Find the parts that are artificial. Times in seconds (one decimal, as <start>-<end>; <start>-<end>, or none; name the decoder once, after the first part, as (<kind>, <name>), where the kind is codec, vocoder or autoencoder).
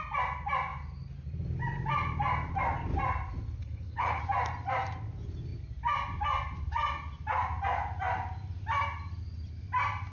3.6-4.2 (codec, HILCodec)